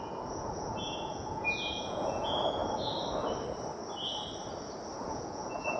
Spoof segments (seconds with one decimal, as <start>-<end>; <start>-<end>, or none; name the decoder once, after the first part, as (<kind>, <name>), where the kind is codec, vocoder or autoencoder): 0.0-2.6 (vocoder, Vocos); 5.1-5.8